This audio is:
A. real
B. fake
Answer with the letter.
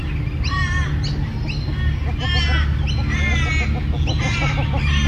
A